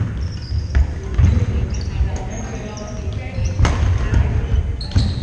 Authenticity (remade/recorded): recorded